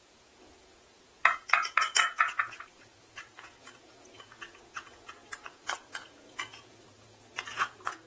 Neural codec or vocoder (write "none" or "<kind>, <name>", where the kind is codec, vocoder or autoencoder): vocoder, Vocos